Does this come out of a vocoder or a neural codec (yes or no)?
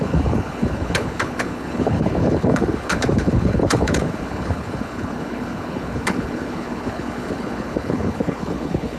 yes